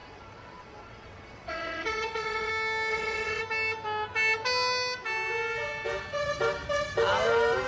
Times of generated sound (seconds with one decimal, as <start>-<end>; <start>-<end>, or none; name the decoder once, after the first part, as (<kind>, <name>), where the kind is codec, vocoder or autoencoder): 0.0-2.5 (vocoder, WaveNeXt); 2.9-3.4